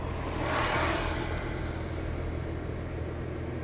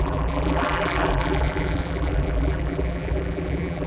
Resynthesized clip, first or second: second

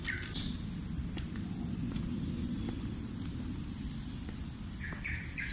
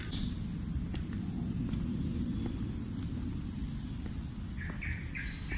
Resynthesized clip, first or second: first